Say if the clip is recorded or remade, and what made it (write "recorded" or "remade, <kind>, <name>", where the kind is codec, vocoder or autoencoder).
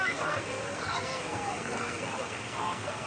remade, codec, SNAC